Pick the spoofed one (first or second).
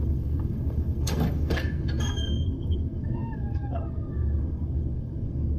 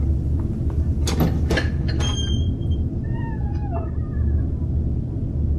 first